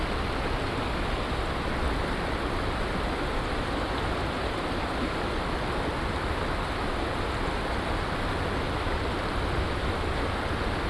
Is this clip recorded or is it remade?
recorded